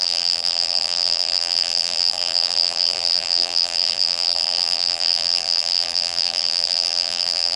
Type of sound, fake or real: fake